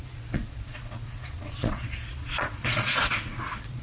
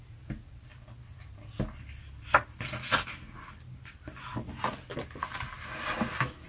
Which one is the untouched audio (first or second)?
second